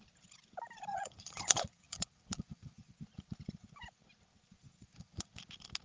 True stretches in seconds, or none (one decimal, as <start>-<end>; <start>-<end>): 0.0-0.9; 3.0-4.6; 5.3-5.8